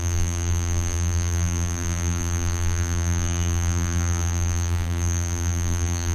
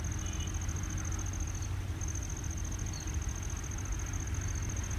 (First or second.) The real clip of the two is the second